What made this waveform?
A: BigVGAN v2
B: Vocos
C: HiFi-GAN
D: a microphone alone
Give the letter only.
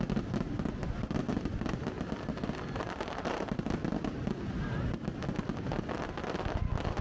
D